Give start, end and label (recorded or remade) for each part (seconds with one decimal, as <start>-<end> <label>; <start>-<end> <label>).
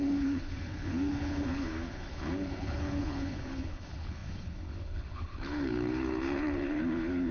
0.0-7.3 remade